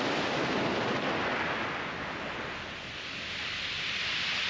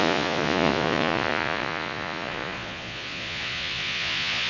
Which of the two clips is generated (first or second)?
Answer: second